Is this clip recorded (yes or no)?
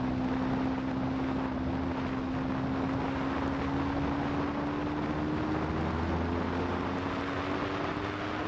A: yes